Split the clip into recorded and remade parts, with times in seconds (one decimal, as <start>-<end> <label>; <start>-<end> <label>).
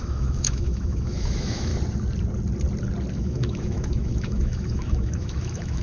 0.0-1.7 remade; 1.7-3.1 recorded; 3.1-5.8 remade